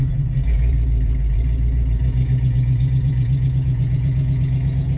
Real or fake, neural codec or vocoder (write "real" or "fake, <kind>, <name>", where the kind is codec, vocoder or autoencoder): fake, vocoder, Vocos